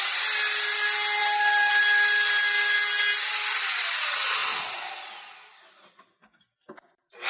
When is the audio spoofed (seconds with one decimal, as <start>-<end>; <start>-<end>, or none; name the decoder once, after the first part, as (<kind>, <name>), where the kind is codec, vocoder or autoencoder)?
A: none